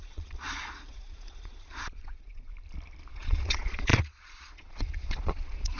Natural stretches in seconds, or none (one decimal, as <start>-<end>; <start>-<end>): 2.5-3.1